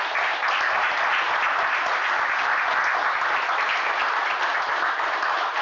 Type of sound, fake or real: real